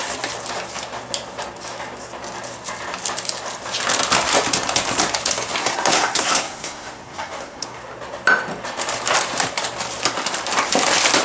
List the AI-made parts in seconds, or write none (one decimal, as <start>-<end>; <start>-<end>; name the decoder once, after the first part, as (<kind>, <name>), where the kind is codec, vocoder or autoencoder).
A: 5.6-7.8 (codec, SNAC)